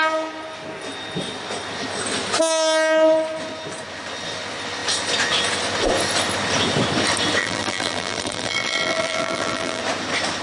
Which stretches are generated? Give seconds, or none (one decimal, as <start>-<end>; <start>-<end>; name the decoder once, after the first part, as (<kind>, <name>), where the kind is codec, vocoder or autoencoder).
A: 7.4-9.8 (vocoder, BigVGAN v2)